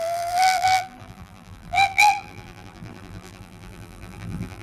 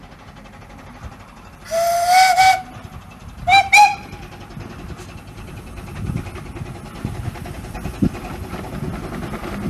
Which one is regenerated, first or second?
first